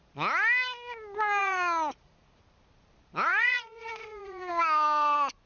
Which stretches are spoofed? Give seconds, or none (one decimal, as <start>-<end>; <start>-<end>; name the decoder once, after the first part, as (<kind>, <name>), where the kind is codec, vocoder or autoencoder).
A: 1.4-2.4 (vocoder, Vocos); 3.3-4.5